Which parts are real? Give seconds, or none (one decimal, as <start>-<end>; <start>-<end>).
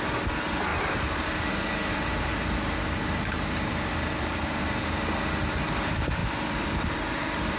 0.0-0.7; 5.3-6.2